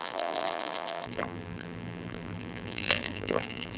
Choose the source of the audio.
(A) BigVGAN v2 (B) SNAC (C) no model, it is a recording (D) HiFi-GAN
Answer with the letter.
A